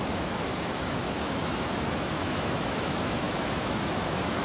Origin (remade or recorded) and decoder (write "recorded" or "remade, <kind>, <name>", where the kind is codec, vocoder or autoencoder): remade, autoencoder, DAC-VAE